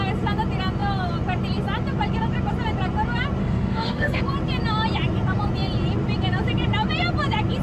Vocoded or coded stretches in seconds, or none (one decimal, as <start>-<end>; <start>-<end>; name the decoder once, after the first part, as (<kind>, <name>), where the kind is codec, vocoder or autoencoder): 3.4-4.2 (autoencoder, DAC-VAE)